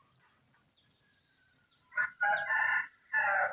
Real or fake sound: real